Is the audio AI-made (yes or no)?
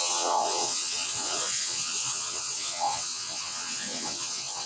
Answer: yes